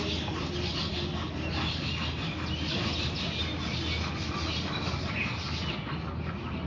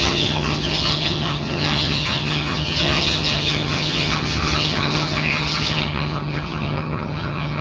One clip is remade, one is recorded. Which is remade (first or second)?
second